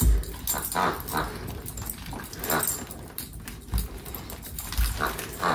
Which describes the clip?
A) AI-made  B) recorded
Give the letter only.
B